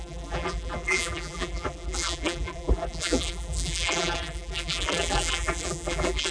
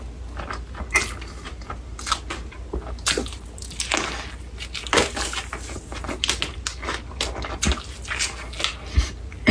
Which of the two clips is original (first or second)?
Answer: second